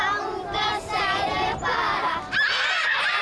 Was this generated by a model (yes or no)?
yes